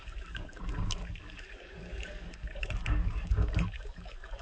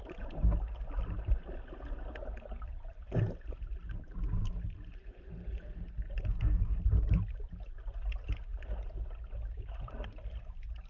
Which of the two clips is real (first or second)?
second